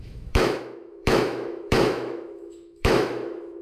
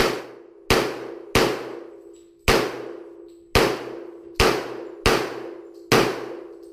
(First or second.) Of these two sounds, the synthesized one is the first